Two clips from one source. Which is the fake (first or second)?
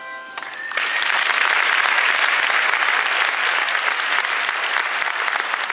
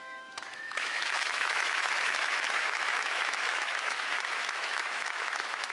second